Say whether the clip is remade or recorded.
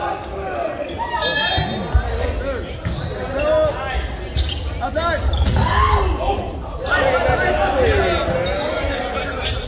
recorded